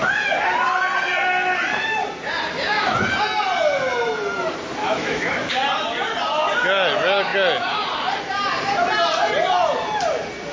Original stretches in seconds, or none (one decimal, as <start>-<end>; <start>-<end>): 0.0-4.8; 5.5-10.5